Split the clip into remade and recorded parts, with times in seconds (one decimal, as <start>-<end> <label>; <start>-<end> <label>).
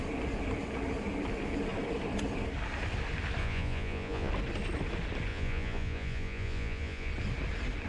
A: 0.0-3.4 recorded; 3.4-4.3 remade; 4.3-5.3 recorded; 5.3-7.1 remade; 7.1-7.9 recorded